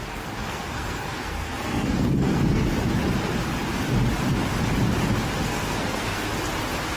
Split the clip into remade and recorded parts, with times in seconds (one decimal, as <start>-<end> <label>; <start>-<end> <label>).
0.0-2.7 remade; 2.7-5.4 recorded; 5.4-6.3 remade; 6.3-7.0 recorded